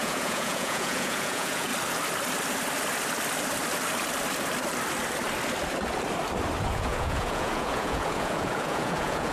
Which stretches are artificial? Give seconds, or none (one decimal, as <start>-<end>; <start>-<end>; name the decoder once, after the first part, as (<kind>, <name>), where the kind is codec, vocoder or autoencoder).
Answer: 0.0-1.7 (vocoder, Vocos); 6.7-9.3

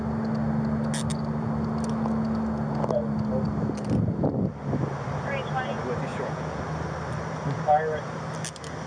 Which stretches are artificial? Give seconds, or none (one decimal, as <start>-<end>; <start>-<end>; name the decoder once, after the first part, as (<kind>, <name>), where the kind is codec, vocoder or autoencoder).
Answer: 6.1-6.6 (vocoder, Vocos)

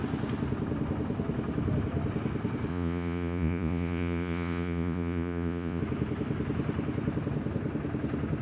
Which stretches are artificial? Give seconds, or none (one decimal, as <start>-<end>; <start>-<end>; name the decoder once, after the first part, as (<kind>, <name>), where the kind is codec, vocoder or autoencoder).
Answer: 2.7-5.8 (vocoder, Vocos)